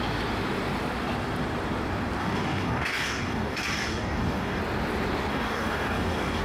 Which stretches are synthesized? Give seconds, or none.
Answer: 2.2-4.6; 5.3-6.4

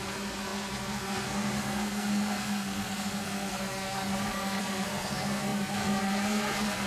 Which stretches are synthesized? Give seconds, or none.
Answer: 0.0-6.9

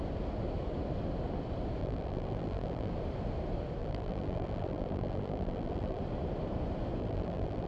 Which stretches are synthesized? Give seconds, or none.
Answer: 1.8-2.9; 3.8-6.0; 7.0-7.7

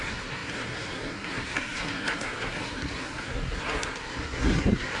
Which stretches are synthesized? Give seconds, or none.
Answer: 0.0-5.0

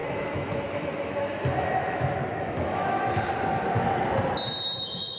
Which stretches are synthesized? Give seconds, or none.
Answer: 0.0-3.1

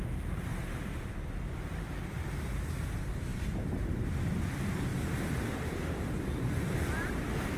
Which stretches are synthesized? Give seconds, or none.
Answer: 0.5-1.1; 3.3-4.2; 4.9-6.7